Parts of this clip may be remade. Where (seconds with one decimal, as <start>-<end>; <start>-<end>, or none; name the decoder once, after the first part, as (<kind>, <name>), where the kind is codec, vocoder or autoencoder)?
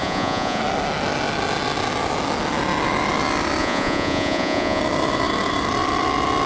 0.0-0.6 (vocoder, Vocos); 3.6-4.8